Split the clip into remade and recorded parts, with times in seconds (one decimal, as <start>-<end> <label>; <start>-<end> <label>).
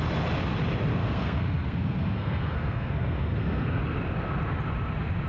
0.0-1.0 recorded; 1.0-3.8 remade; 3.8-5.3 recorded